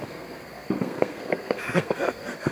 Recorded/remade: remade